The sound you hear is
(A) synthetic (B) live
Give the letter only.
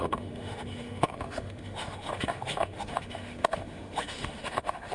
A